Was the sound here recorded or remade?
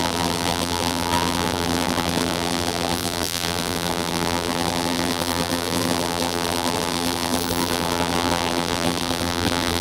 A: remade